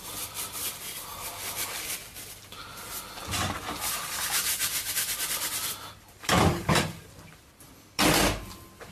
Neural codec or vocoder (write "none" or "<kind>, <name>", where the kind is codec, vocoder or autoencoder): none